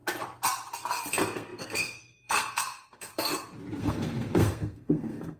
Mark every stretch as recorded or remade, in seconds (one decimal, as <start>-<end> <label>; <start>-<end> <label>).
0.0-1.1 recorded; 1.1-3.3 remade; 3.3-3.8 recorded; 3.8-5.4 remade

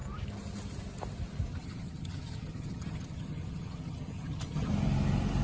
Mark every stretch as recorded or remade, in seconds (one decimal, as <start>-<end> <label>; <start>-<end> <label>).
0.0-1.5 recorded; 1.5-4.7 remade; 4.7-5.4 recorded

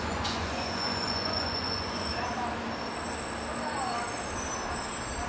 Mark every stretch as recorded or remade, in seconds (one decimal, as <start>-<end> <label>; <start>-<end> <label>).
0.0-2.1 remade; 2.1-5.3 recorded

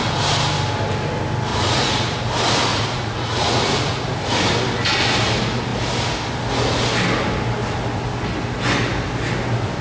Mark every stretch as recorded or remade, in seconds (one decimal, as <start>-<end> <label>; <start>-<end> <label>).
0.0-1.5 recorded; 1.5-2.2 remade; 2.2-2.7 recorded; 2.7-4.0 remade; 4.0-9.8 recorded

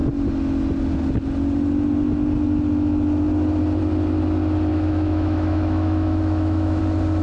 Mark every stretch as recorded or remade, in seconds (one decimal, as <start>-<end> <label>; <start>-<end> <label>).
0.0-4.7 recorded; 4.7-6.8 remade; 6.8-7.2 recorded

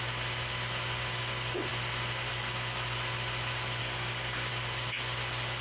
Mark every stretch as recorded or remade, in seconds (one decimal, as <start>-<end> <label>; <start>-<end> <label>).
0.0-3.8 recorded; 3.8-4.5 remade; 4.5-5.6 recorded

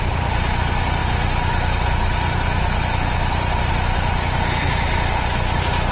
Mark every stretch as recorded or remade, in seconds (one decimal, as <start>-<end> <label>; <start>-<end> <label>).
0.0-5.9 recorded